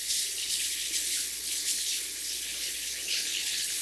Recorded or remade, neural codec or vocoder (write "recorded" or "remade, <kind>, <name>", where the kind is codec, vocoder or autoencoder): remade, codec, HILCodec